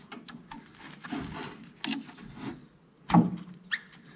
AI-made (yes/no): no